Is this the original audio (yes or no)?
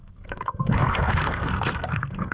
no